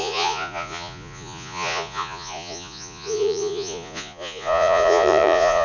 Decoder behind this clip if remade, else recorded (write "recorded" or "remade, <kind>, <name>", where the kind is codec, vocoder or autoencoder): remade, vocoder, Vocos